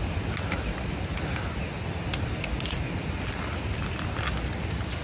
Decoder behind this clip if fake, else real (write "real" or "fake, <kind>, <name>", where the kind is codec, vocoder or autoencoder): real